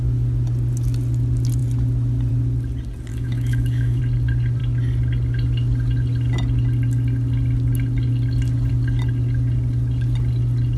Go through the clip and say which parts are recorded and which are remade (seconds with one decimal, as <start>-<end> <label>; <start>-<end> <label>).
0.0-3.1 recorded; 3.1-4.0 remade; 4.0-10.8 recorded